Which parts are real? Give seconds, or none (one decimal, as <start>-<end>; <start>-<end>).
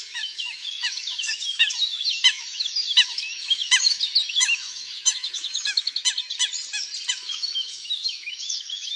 6.0-7.1